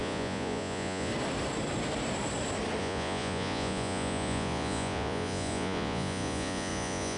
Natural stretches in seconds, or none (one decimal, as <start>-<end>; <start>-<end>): 1.1-2.8